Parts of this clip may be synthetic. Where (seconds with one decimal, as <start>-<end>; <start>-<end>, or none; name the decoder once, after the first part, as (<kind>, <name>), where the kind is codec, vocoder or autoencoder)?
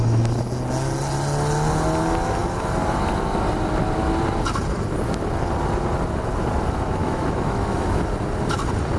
7.0-8.0 (autoencoder, DAC-VAE)